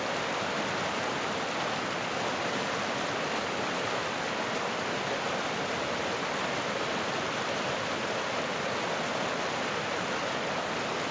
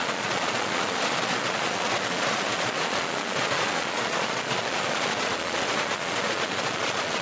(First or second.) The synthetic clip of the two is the second